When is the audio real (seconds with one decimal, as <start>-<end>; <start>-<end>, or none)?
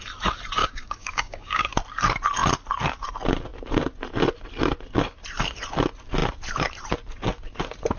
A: 0.0-0.6; 1.7-8.0